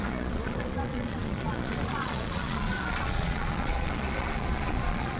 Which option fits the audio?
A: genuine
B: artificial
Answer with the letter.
B